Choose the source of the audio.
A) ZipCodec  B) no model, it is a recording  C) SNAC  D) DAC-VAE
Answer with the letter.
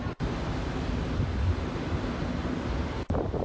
B